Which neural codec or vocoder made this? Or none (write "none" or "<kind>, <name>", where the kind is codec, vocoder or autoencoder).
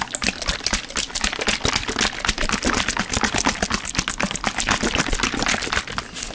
none